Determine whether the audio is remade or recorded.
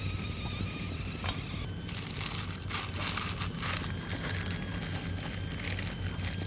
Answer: recorded